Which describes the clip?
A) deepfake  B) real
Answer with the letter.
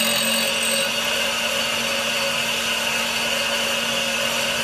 B